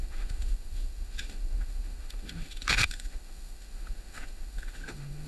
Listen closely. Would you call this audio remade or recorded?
remade